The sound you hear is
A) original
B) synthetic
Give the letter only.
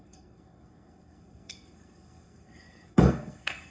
B